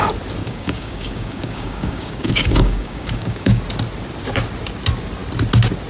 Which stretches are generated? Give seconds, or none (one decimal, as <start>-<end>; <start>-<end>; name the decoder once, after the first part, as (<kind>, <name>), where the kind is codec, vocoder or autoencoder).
0.4-3.6 (codec, DAC)